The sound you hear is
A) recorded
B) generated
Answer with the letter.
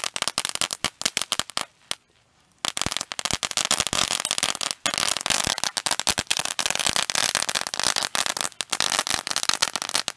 A